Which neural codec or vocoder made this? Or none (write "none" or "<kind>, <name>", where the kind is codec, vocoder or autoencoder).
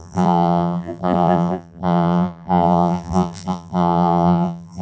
vocoder, BigVGAN v2